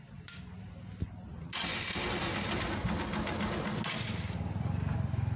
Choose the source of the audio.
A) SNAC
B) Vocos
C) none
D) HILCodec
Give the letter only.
C